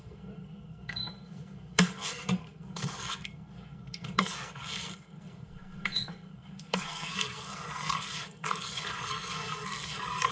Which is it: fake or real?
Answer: fake